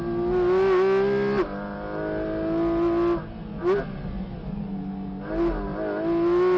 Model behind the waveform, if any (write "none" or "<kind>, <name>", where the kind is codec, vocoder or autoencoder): none